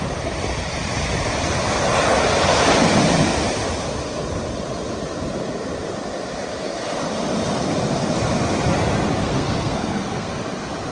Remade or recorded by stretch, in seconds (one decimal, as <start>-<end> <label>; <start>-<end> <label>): 0.0-9.2 recorded; 9.2-10.4 remade; 10.4-10.9 recorded